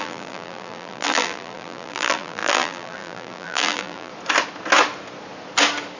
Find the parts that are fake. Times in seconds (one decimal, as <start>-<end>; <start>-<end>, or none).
0.0-4.1